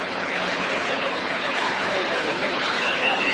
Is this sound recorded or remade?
remade